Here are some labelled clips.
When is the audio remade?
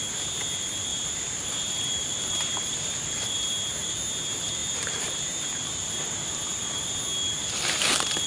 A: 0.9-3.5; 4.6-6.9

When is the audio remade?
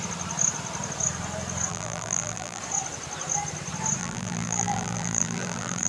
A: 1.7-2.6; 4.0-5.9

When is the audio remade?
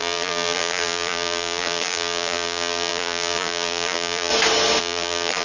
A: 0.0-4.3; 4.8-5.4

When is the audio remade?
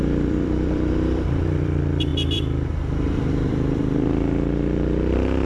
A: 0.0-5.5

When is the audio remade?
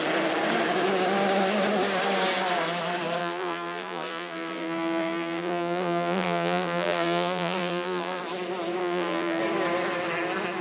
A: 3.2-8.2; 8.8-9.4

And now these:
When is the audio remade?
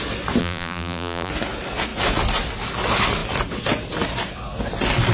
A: 0.4-1.3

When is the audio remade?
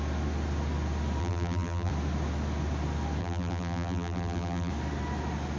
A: 1.2-1.9; 3.2-4.7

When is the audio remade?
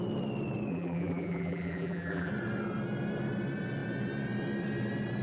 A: 0.7-2.3